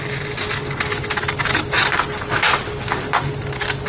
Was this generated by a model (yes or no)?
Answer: no